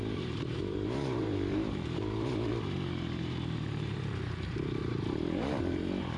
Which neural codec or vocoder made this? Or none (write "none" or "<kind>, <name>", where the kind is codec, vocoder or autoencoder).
vocoder, BigVGAN v2